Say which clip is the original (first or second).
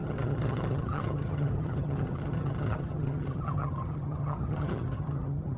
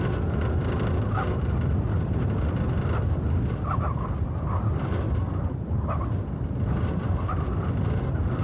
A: second